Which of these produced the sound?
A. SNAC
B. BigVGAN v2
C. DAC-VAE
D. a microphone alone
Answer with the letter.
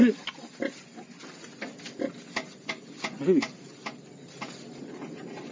D